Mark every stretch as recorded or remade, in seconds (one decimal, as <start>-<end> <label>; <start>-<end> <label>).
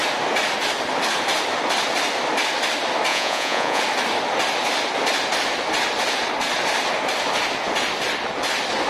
0.0-3.1 recorded; 3.1-3.8 remade; 3.8-8.9 recorded